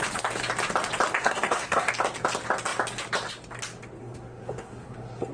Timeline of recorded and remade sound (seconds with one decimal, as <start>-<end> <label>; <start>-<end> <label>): 0.0-1.2 recorded; 1.2-1.9 remade; 1.9-4.0 recorded; 4.0-5.3 remade